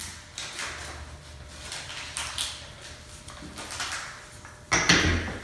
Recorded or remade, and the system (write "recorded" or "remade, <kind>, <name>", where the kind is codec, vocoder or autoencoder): recorded